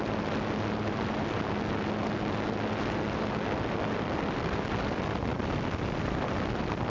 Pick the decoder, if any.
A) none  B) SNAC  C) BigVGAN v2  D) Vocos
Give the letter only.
A